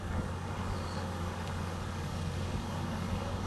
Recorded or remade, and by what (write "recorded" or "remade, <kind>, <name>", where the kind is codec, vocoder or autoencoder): remade, codec, DAC